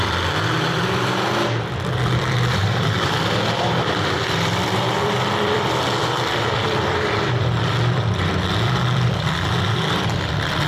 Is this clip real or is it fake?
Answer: fake